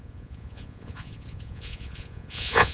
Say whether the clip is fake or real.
fake